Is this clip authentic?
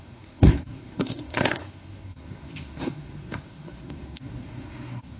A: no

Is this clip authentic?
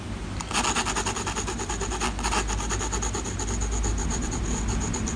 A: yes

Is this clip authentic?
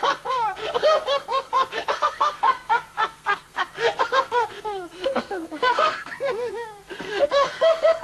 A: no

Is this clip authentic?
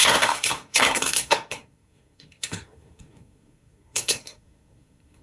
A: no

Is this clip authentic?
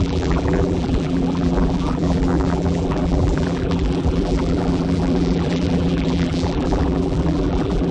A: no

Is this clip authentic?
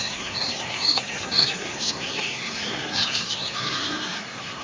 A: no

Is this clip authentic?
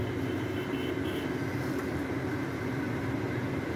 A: yes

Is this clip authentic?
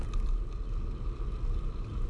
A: yes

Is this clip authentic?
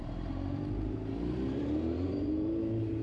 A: no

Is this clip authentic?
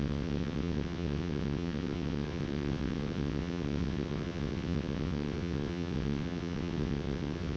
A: no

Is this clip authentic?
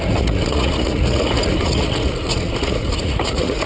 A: no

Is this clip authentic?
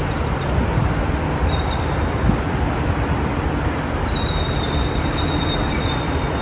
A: no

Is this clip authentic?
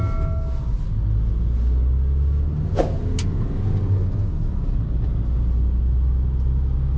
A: yes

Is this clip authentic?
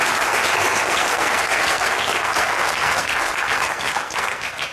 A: no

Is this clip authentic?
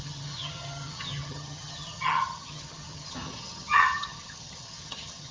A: no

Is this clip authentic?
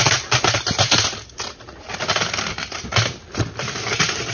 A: yes